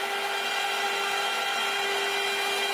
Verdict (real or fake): real